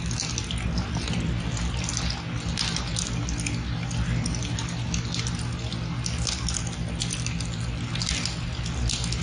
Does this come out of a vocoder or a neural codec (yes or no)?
no